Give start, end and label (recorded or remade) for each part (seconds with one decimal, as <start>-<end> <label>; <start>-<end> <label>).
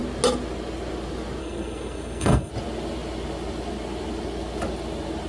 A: 0.0-1.4 recorded; 1.4-2.5 remade; 2.5-5.3 recorded